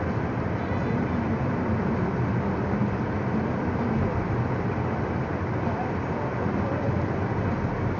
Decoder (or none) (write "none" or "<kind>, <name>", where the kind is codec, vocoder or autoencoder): none